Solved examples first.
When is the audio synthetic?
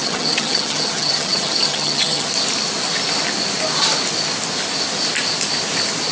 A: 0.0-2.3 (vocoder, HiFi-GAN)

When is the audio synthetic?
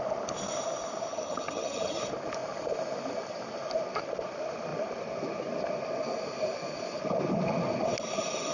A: 1.1-2.0 (vocoder, HiFi-GAN)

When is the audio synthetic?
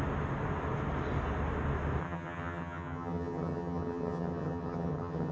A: 2.0-5.3 (vocoder, HiFi-GAN)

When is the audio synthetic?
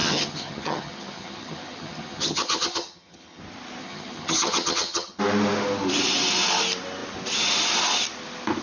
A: 0.0-3.4 (vocoder, HiFi-GAN); 3.8-5.2